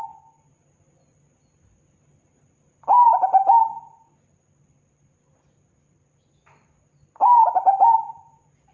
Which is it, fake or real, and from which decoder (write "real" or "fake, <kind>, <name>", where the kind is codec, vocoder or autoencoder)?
real